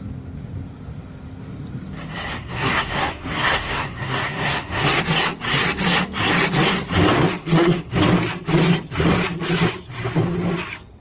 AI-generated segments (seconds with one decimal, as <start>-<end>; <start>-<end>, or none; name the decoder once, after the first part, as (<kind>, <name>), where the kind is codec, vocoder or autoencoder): 2.3-5.0 (codec, SNAC); 7.4-8.0